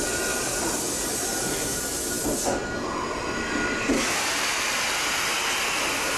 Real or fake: real